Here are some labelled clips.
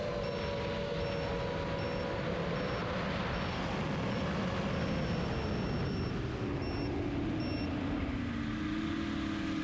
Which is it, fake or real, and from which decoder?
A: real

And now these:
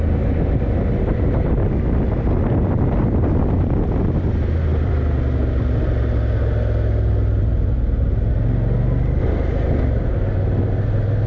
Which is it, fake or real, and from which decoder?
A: real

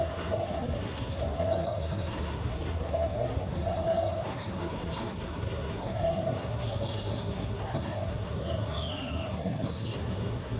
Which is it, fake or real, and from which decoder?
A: fake, codec, SNAC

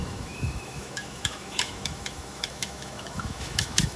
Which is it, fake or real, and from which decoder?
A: fake, autoencoder, DAC-VAE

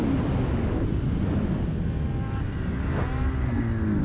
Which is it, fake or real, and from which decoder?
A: real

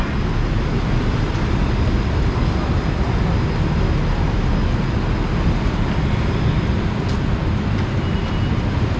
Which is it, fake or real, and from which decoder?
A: real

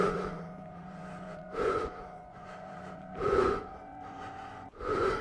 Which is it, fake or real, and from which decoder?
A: fake, vocoder, Vocos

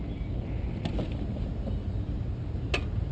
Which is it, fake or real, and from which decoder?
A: real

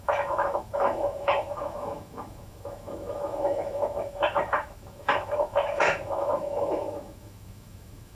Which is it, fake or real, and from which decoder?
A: fake, autoencoder, DAC-VAE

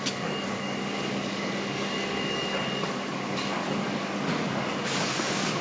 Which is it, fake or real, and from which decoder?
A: fake, codec, DAC